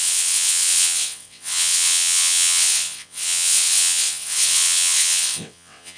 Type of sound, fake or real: fake